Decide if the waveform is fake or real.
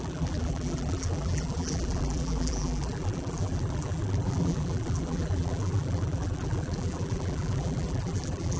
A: fake